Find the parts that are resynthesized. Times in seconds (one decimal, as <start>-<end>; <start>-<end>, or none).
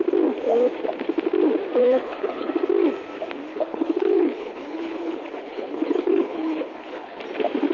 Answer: 1.8-2.5; 3.5-7.2